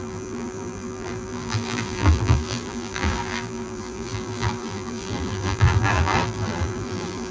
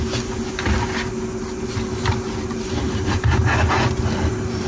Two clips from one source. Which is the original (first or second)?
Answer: second